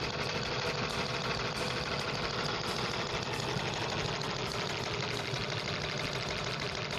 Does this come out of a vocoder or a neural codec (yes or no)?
no